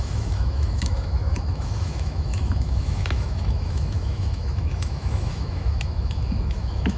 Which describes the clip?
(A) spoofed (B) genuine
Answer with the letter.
A